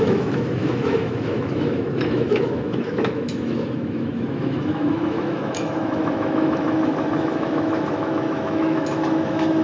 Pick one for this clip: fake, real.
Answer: fake